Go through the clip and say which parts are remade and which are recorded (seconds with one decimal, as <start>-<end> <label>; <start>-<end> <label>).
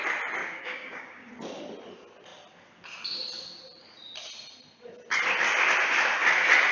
0.0-0.4 recorded; 0.4-1.3 remade; 1.3-6.7 recorded